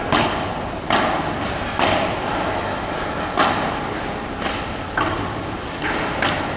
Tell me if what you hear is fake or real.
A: real